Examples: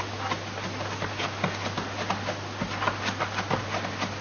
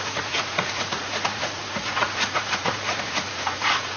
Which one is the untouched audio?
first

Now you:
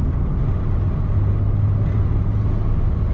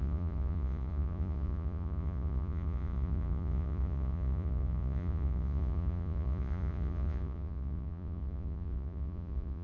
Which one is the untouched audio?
first